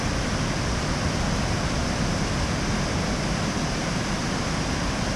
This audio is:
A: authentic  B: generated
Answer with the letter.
A